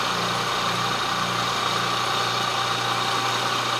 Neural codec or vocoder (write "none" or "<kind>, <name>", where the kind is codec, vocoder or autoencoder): none